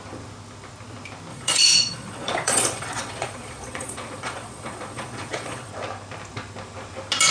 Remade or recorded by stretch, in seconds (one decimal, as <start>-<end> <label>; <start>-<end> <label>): 0.0-1.3 recorded; 1.3-5.7 remade; 5.7-7.3 recorded